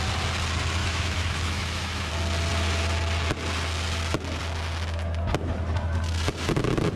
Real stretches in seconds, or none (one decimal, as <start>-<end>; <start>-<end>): 0.0-0.8; 2.1-7.0